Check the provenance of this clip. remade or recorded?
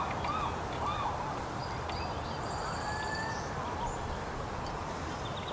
recorded